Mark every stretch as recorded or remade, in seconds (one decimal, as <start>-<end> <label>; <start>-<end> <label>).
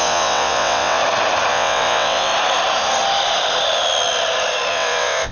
0.0-1.0 remade; 1.0-1.5 recorded; 1.5-2.3 remade; 2.3-4.7 recorded; 4.7-5.3 remade